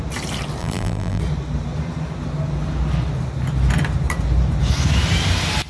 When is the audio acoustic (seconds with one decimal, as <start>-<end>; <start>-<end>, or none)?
0.0-0.6; 1.2-5.7